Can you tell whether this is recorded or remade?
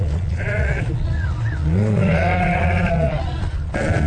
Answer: remade